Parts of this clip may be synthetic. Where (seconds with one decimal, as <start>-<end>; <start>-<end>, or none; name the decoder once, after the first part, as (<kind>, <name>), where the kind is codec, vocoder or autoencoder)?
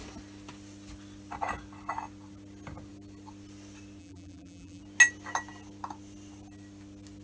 4.0-4.8 (vocoder, BigVGAN v2)